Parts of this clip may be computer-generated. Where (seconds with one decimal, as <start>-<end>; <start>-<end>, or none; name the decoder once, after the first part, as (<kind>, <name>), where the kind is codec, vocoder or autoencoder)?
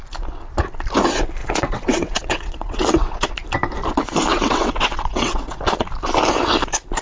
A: 1.4-3.3 (vocoder, WaveNeXt); 4.3-5.6